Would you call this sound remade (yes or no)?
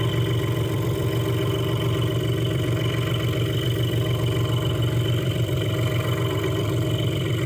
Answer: yes